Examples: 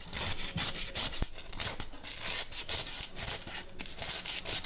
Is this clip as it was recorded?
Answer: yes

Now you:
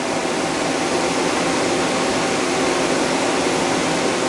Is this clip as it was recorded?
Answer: yes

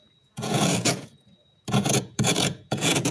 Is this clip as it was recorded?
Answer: no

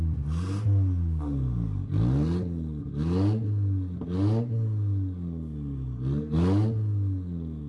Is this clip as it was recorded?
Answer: yes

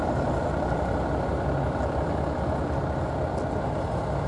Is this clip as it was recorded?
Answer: yes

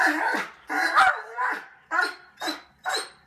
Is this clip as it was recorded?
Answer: yes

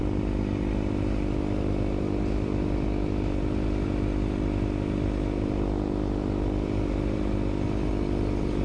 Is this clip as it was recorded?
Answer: yes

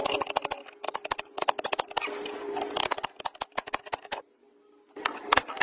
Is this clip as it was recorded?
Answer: yes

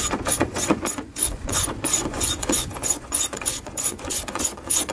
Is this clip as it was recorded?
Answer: no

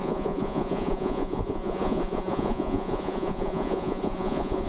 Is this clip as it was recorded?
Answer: no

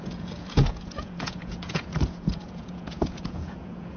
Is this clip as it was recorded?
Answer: no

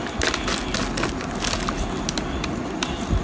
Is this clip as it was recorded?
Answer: yes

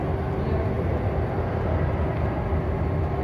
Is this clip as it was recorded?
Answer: yes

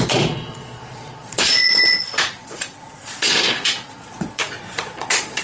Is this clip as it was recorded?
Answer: no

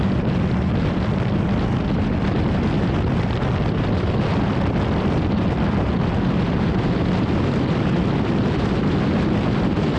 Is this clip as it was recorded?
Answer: yes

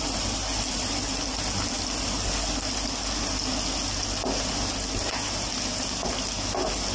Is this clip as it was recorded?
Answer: yes